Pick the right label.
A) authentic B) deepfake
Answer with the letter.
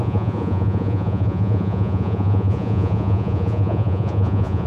B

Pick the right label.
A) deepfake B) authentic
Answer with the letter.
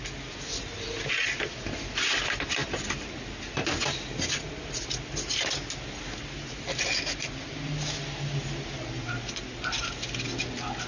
B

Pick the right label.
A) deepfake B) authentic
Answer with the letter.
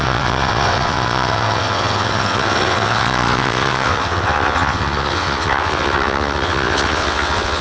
A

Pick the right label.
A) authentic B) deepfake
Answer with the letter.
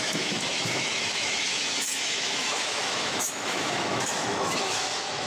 B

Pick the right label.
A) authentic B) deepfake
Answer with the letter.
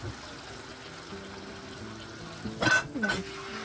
A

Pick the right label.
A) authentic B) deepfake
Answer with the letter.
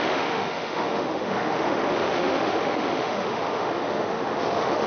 B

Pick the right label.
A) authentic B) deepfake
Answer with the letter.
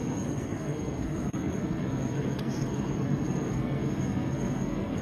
B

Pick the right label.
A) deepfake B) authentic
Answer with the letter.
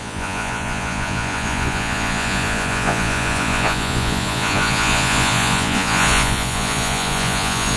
A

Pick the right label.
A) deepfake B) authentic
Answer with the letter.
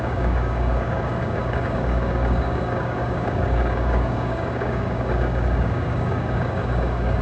A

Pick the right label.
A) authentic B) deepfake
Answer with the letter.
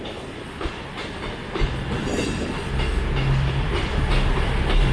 A